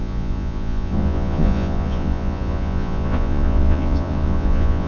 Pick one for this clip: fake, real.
fake